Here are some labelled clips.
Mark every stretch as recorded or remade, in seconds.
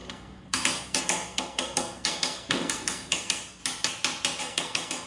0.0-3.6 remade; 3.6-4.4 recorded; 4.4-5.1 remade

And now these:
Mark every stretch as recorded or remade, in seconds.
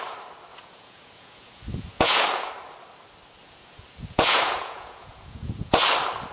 0.0-0.5 recorded; 0.5-2.5 remade; 2.5-3.4 recorded; 3.4-5.8 remade; 5.8-6.3 recorded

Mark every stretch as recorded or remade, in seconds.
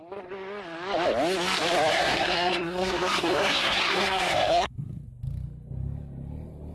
0.0-1.9 recorded; 1.9-5.0 remade; 5.0-6.7 recorded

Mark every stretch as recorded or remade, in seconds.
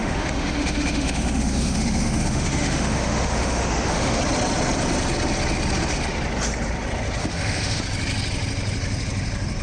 0.0-4.2 remade; 4.2-7.2 recorded; 7.2-7.8 remade; 7.8-9.6 recorded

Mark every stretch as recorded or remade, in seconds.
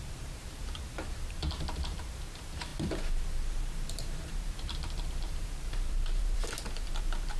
0.0-7.4 remade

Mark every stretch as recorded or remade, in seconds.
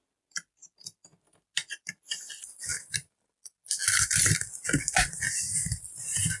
0.0-6.4 recorded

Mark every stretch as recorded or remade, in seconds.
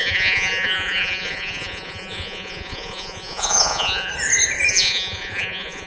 0.0-4.1 remade; 4.1-4.7 recorded; 4.7-5.9 remade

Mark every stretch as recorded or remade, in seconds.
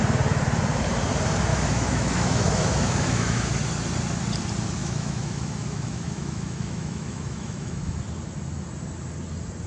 0.0-1.5 recorded; 1.5-3.5 remade; 3.5-4.8 recorded; 4.8-8.0 remade; 8.0-9.7 recorded